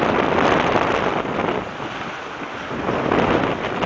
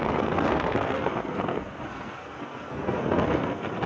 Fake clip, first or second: second